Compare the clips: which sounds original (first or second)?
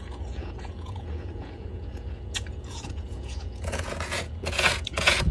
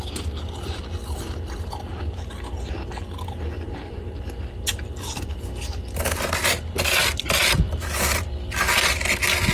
second